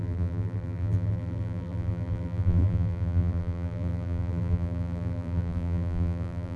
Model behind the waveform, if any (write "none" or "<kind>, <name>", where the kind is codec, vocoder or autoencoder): vocoder, BigVGAN v2